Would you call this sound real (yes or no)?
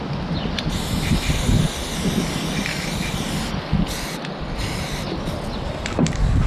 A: yes